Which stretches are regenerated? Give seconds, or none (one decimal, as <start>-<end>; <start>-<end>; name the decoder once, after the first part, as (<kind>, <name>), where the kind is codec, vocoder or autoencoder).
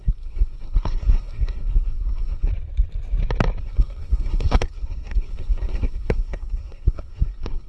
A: 0.0-2.5 (codec, SNAC); 3.6-7.7